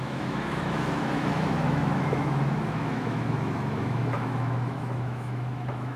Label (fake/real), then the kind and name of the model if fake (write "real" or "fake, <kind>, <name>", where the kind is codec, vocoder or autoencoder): fake, autoencoder, DAC-VAE